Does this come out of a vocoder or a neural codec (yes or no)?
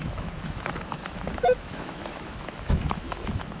yes